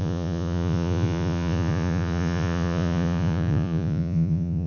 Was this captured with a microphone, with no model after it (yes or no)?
no